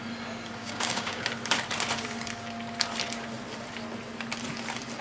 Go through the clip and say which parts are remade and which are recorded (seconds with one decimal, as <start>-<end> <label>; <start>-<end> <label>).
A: 0.0-0.6 recorded; 0.6-1.2 remade; 1.2-5.0 recorded